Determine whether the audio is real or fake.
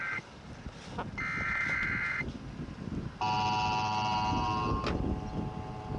real